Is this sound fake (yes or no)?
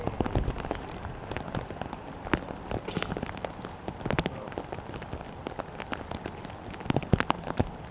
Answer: no